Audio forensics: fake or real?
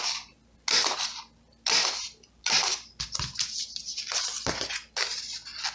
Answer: real